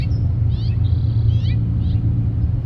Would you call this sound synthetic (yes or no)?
no